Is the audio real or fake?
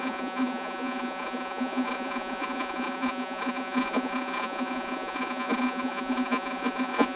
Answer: fake